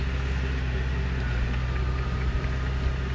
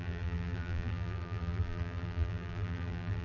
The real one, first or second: first